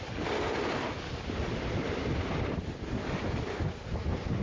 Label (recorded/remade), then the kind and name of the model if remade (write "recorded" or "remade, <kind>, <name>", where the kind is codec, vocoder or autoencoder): recorded